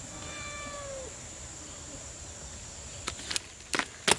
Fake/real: real